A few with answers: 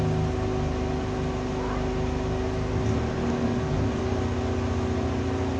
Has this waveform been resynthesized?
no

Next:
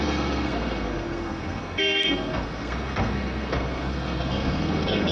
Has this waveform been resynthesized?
yes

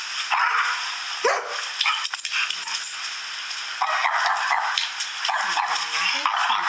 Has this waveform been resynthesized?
no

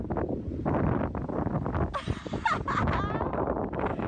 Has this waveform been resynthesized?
no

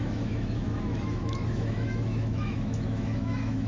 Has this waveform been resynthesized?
yes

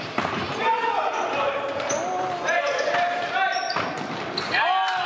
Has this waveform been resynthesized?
no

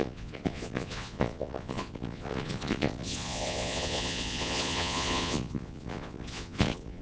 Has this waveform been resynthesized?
yes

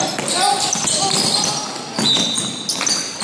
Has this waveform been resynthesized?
no